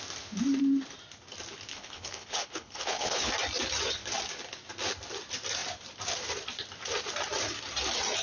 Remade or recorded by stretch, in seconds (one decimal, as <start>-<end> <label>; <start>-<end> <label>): 0.0-1.7 recorded; 1.7-3.3 remade; 3.3-8.2 recorded